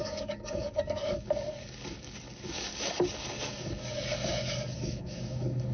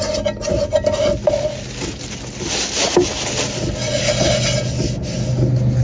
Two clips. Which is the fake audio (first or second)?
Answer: first